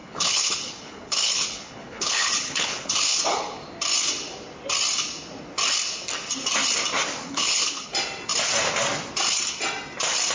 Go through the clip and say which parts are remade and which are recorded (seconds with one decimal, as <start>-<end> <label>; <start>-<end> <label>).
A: 0.0-3.6 remade; 3.6-7.2 recorded; 7.2-7.9 remade; 7.9-10.3 recorded